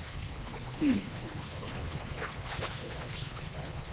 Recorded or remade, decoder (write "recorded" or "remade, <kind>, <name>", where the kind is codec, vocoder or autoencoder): remade, codec, HILCodec